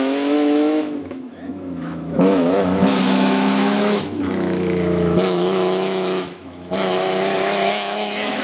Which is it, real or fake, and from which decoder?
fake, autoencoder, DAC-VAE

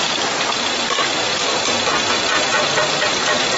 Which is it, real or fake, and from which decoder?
real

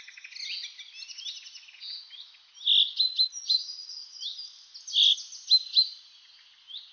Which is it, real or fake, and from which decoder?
real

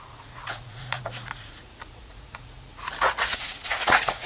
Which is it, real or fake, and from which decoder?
fake, vocoder, Vocos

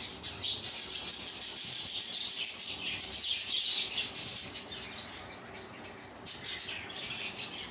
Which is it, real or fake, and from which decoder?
real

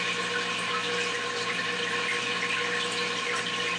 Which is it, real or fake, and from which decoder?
real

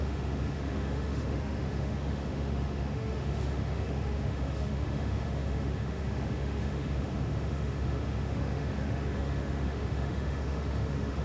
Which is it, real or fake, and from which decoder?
fake, autoencoder, DAC-VAE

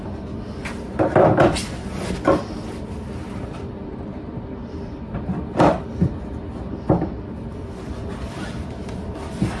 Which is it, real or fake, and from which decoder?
fake, vocoder, BigVGAN v2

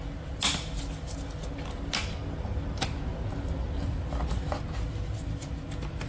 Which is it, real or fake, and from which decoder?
real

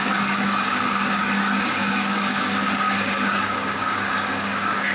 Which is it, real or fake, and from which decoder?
fake, codec, DAC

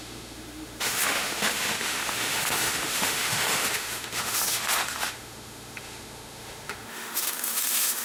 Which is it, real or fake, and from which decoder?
fake, autoencoder, DAC-VAE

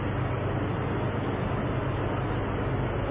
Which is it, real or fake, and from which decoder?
real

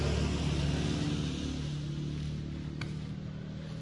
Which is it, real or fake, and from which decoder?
real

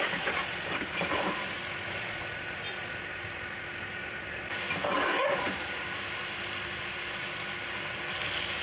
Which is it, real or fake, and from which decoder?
real